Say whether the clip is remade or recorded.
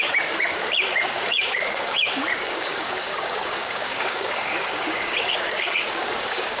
remade